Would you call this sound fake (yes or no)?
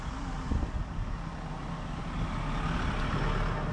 no